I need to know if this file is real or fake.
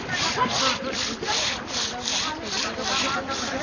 real